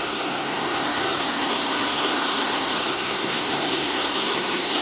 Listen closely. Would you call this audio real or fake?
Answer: fake